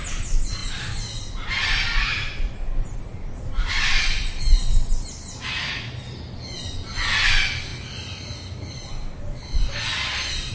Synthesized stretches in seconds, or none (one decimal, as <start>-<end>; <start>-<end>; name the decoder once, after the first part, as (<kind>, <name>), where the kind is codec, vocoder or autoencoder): none